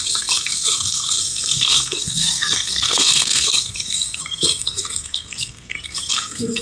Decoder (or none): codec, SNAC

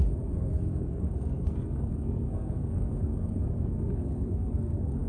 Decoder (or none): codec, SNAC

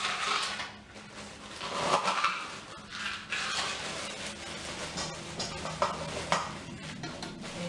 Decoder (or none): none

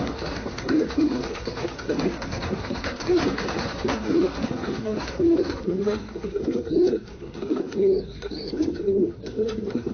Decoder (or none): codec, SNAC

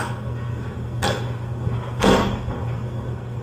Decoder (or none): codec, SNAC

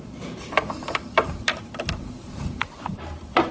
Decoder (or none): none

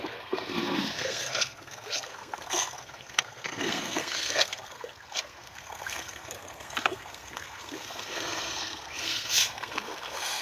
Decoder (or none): codec, SNAC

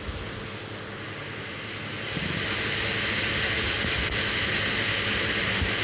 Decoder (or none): none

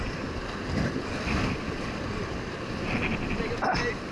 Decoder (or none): none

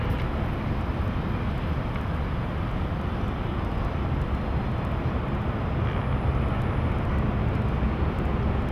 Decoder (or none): none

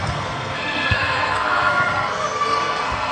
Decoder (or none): codec, SNAC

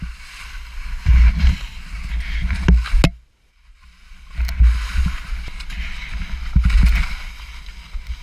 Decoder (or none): none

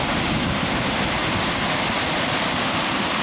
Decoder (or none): none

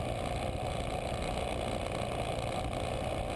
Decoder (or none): none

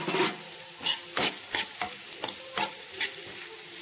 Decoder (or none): none